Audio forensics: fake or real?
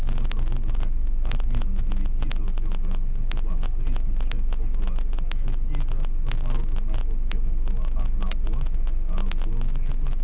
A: real